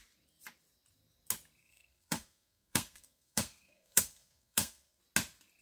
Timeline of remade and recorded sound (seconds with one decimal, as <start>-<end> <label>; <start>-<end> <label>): 0.0-1.6 recorded; 1.6-5.0 remade; 5.0-5.6 recorded